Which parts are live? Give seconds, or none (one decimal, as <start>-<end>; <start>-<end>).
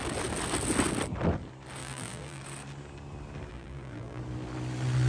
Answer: 0.0-1.8; 2.4-3.5; 4.2-5.1